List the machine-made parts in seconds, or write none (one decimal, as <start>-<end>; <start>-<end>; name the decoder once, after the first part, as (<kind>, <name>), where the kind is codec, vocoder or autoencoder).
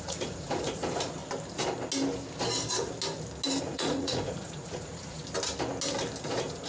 0.0-1.2 (vocoder, Vocos); 3.6-5.2; 6.2-6.7